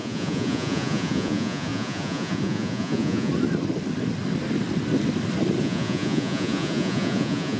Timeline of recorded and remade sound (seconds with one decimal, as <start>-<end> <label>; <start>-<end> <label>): 0.0-3.3 remade; 3.3-5.6 recorded; 5.6-7.6 remade